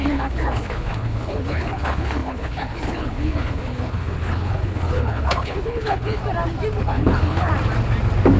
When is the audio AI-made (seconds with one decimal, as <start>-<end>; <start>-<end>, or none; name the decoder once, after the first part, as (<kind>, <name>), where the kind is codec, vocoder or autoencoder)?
0.0-6.2 (codec, HILCodec); 6.8-7.5